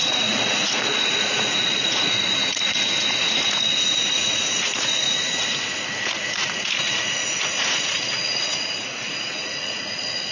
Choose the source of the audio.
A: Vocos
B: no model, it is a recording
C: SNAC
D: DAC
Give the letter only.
A